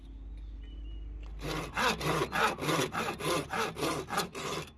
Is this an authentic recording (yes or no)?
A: yes